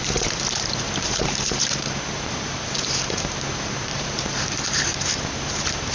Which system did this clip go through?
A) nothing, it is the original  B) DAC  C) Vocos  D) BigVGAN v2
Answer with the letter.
D